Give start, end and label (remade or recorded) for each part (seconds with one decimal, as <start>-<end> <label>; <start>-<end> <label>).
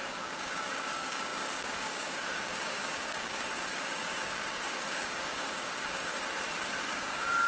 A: 0.0-6.1 remade; 6.1-6.8 recorded; 6.8-7.5 remade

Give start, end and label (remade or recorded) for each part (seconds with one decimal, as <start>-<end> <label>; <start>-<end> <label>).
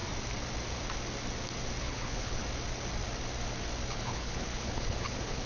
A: 0.0-1.8 recorded; 1.8-2.4 remade; 2.4-3.9 recorded; 3.9-5.5 remade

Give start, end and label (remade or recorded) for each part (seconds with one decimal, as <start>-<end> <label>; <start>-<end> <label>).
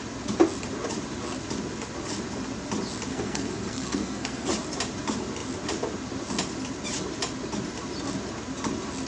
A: 0.0-3.1 recorded; 3.1-4.5 remade; 4.5-9.1 recorded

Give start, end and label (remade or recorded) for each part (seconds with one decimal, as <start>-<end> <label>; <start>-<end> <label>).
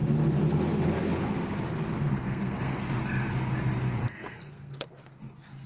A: 0.0-2.1 recorded; 2.1-2.8 remade; 2.8-4.0 recorded; 4.0-5.7 remade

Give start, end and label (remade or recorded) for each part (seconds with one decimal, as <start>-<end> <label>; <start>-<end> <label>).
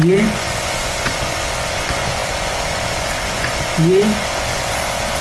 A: 0.0-5.2 remade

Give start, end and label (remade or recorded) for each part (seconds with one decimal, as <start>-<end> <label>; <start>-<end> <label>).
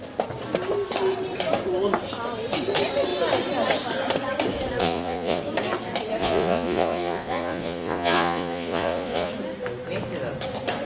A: 0.0-4.8 recorded; 4.8-5.4 remade; 5.4-6.2 recorded; 6.2-9.3 remade; 9.3-10.8 recorded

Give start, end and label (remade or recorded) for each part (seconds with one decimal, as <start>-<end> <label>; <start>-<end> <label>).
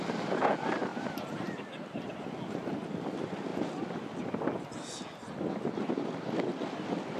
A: 0.0-7.2 recorded